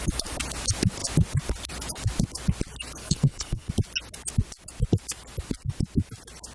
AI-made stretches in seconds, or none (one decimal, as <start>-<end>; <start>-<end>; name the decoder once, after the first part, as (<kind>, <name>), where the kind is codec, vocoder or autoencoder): 3.0-3.7 (codec, SNAC)

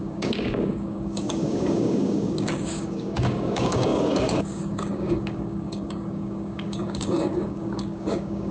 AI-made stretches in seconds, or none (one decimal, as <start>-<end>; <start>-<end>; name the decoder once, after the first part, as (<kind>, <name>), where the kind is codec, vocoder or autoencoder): 0.0-8.5 (codec, DAC)

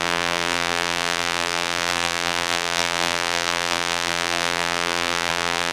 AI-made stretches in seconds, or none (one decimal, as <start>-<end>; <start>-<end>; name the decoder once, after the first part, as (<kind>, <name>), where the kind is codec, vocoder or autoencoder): 0.0-5.7 (vocoder, BigVGAN v2)